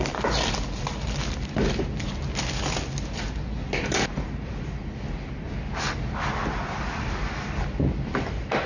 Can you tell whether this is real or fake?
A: real